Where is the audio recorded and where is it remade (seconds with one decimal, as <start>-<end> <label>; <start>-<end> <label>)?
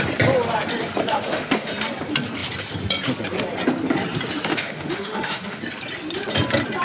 0.0-1.1 recorded; 1.1-1.7 remade; 1.7-4.5 recorded; 4.5-5.6 remade; 5.6-6.8 recorded